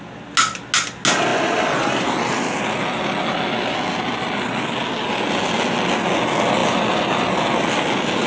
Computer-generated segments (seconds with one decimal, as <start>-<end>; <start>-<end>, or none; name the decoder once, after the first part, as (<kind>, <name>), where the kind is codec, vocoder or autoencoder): none